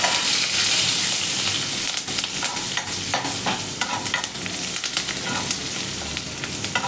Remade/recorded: recorded